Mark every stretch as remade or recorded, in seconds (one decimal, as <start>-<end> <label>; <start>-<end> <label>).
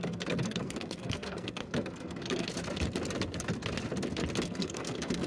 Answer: 0.0-2.5 remade; 2.5-4.4 recorded; 4.4-5.3 remade